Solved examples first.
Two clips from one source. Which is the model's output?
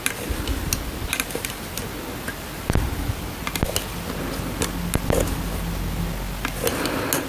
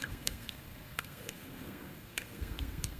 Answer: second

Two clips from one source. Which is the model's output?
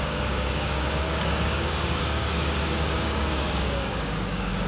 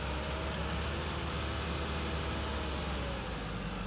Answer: first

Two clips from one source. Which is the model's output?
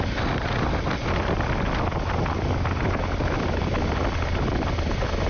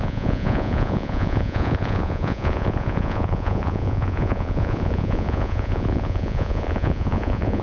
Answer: second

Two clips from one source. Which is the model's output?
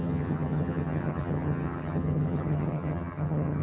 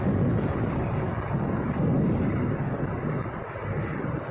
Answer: first